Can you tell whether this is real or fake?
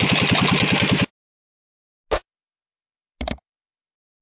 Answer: real